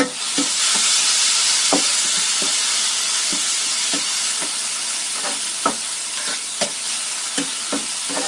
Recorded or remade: recorded